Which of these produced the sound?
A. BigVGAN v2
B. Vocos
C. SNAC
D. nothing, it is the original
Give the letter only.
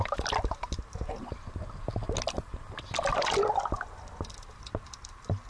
D